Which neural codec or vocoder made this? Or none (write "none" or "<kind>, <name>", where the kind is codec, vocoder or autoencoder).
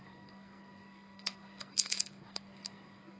codec, SNAC